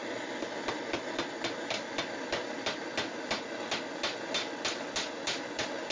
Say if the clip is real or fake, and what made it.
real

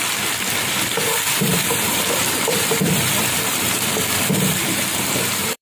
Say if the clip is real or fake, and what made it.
fake, vocoder, BigVGAN v2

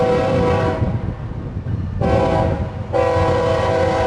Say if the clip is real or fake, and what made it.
real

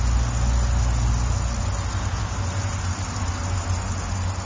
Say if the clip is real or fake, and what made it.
real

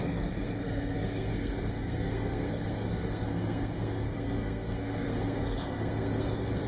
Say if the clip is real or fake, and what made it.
fake, codec, SNAC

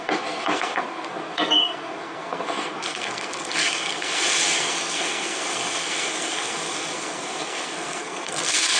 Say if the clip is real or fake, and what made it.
fake, codec, SNAC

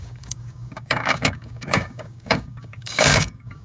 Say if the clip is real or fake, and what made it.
fake, codec, DAC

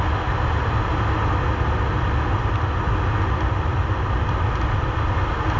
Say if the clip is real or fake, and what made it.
real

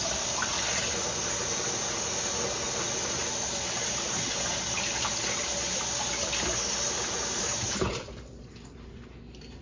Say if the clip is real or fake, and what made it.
real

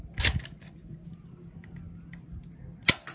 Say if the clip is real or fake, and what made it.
real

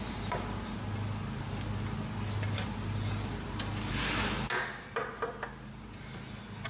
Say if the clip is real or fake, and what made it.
real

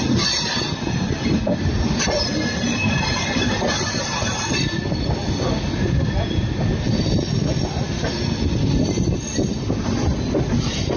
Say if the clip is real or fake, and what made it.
real